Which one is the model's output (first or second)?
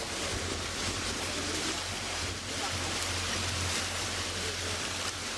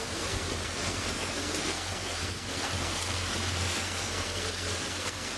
second